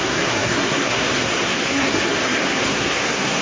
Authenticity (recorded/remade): remade